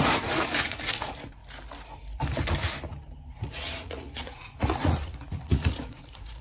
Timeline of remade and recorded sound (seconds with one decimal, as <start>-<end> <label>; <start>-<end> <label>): 0.0-1.4 remade; 1.4-3.3 recorded; 3.3-6.4 remade